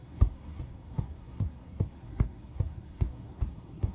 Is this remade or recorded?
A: remade